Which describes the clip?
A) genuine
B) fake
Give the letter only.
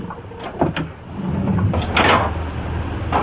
A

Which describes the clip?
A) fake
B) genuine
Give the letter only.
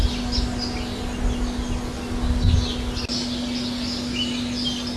B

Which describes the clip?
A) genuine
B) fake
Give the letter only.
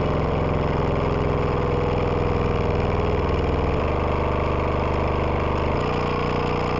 A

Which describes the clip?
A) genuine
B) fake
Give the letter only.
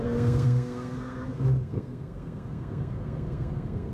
B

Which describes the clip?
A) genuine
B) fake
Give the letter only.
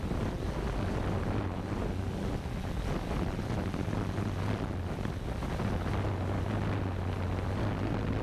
A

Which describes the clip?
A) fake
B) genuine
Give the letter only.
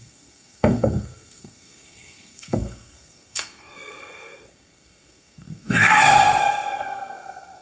A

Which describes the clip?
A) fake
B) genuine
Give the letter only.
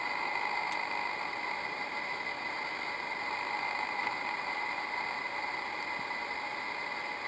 B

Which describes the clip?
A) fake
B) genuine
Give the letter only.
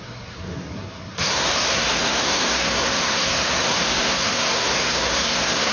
A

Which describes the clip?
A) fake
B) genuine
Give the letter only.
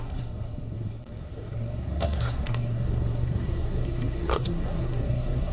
A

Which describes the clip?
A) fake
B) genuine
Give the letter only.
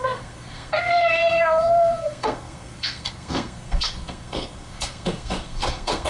A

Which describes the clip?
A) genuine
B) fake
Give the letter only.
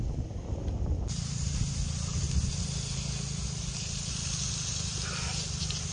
A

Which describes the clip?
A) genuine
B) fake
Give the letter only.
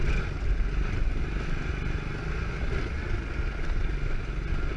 A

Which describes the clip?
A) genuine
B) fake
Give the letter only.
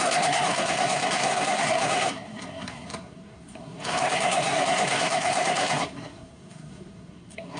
B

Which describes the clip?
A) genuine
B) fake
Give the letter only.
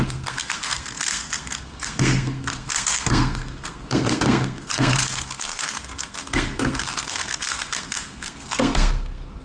B